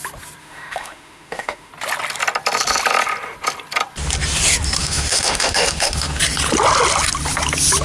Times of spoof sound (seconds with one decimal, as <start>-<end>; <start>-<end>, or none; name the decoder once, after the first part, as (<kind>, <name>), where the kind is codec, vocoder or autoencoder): 0.4-1.7 (autoencoder, DAC-VAE); 4.8-6.2